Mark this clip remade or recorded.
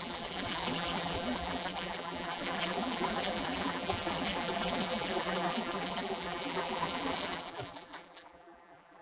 remade